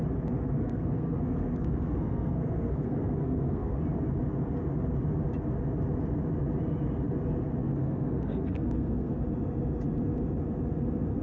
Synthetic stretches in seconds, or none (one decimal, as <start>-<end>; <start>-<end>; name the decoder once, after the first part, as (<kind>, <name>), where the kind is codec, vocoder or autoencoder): 0.6-3.8 (codec, SNAC); 7.6-9.2